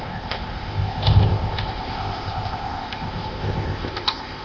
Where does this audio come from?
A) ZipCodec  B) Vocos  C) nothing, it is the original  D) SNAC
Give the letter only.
A